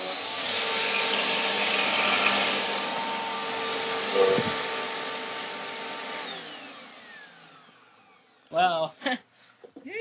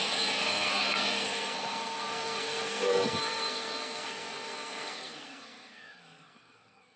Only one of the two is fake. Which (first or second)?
second